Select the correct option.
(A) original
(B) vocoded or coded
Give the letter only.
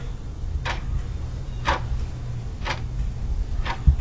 A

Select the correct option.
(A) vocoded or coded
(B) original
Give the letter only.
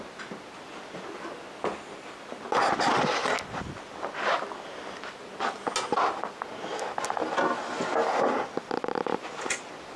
B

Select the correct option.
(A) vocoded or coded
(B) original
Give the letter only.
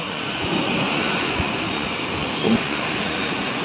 A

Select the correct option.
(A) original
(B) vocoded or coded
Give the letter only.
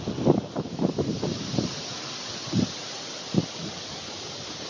A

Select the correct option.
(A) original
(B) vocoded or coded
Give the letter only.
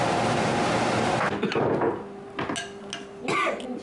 A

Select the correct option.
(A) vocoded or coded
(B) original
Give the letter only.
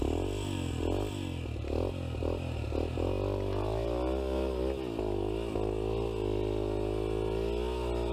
B